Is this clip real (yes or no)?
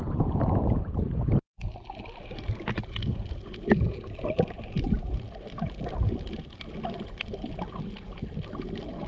yes